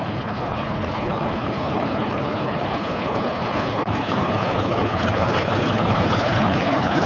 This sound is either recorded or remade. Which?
remade